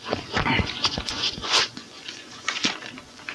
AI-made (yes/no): yes